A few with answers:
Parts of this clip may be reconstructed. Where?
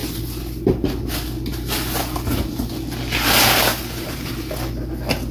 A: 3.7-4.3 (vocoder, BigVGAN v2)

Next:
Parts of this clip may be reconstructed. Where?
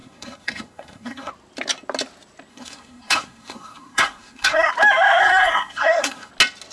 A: 0.0-1.3 (codec, SNAC); 2.5-4.7; 5.2-6.3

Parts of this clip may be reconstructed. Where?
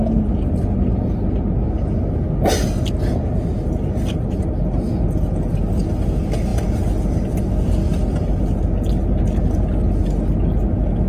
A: none